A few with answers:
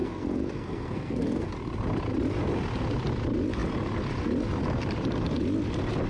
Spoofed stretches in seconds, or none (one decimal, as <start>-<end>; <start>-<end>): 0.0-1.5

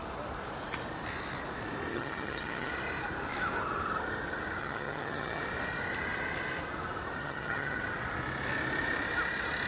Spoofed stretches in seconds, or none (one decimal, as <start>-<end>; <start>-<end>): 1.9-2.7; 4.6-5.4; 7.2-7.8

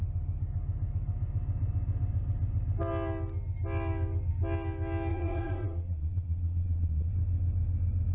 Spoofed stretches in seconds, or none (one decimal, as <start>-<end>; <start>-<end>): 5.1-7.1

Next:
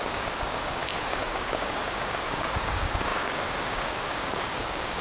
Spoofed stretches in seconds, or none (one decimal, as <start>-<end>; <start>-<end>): 0.0-5.0